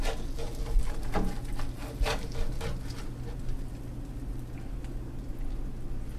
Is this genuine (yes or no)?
yes